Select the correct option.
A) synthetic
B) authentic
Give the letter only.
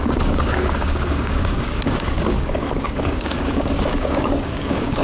A